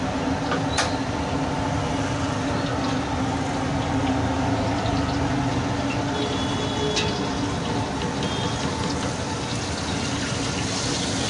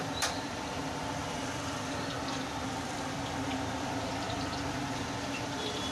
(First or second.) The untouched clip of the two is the first